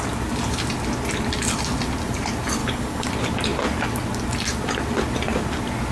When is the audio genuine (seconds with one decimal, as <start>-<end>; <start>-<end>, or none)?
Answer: 0.0-2.6; 3.1-5.9